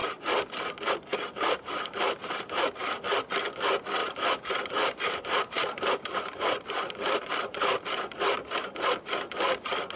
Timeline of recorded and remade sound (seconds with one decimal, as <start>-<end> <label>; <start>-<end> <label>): 0.0-1.1 recorded; 1.1-2.7 remade; 2.7-4.0 recorded; 4.0-7.3 remade; 7.3-10.0 recorded